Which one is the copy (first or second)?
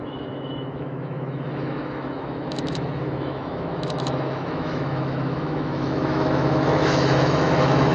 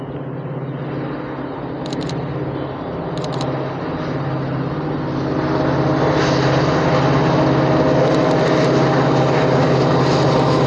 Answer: first